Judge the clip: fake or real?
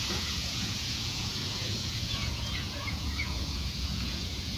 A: fake